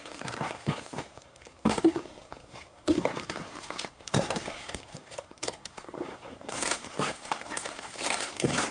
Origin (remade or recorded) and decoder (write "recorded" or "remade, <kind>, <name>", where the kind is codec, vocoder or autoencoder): remade, codec, SNAC